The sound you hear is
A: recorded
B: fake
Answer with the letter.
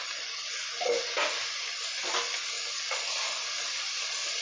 A